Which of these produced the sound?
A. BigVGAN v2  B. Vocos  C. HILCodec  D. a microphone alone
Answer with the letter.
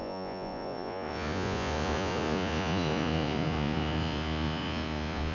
B